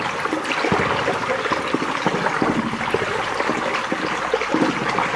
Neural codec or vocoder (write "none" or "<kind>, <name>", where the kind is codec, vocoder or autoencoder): none